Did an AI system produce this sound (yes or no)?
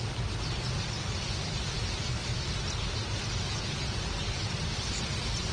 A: no